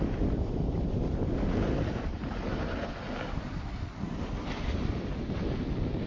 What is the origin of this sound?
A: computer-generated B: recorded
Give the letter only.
B